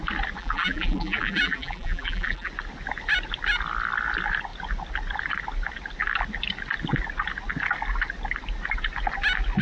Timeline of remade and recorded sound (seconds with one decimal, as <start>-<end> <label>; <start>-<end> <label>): 0.0-0.4 recorded; 0.4-2.5 remade; 2.5-9.6 recorded

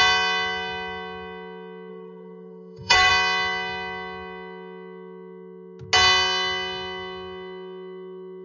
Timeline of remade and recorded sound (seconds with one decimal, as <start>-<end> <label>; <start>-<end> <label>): 0.0-1.9 recorded; 1.9-3.1 remade; 3.1-8.4 recorded

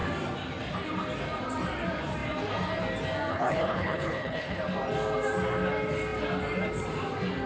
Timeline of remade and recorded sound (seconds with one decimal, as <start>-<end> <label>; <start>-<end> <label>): 0.0-3.3 recorded; 3.3-4.6 remade; 4.6-7.5 recorded